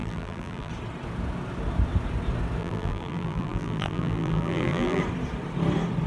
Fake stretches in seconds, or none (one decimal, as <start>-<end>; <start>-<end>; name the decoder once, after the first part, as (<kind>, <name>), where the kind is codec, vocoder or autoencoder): 0.0-0.7 (vocoder, BigVGAN v2); 2.6-5.0